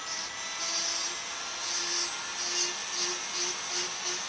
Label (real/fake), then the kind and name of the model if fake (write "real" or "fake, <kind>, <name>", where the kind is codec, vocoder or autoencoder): real